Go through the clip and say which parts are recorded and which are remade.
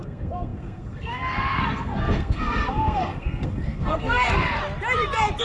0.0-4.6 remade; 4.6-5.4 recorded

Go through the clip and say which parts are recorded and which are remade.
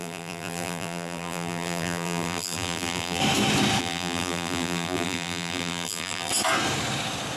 0.0-3.2 remade; 3.2-3.8 recorded; 3.8-6.3 remade; 6.3-7.4 recorded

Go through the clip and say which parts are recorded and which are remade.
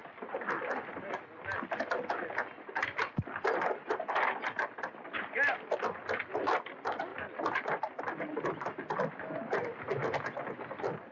0.0-0.9 remade; 0.9-7.1 recorded; 7.1-8.0 remade; 8.0-11.1 recorded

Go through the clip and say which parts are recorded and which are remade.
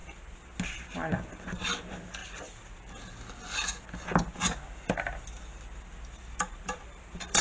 0.0-7.4 recorded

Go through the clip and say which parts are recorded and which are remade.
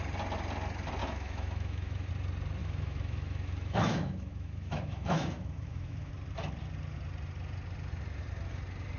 0.0-1.0 recorded; 1.0-2.1 remade; 2.1-2.6 recorded; 2.6-6.1 remade; 6.1-9.0 recorded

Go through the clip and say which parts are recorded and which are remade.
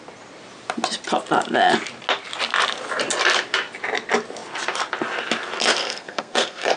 0.0-5.8 recorded; 5.8-6.8 remade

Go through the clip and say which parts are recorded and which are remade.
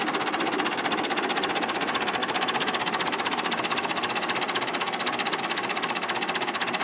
0.0-6.8 recorded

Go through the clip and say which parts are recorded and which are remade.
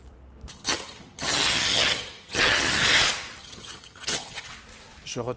0.0-0.5 recorded; 0.5-2.8 remade; 2.8-3.4 recorded; 3.4-4.5 remade; 4.5-5.4 recorded